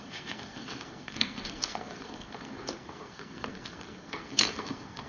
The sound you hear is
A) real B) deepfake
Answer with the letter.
B